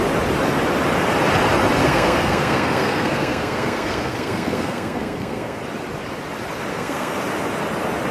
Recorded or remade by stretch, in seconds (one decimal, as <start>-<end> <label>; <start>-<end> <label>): 0.0-1.8 recorded; 1.8-5.6 remade; 5.6-6.7 recorded; 6.7-7.2 remade; 7.2-8.1 recorded